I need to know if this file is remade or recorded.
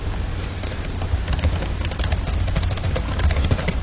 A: recorded